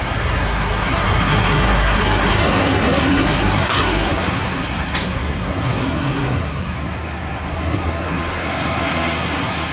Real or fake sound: fake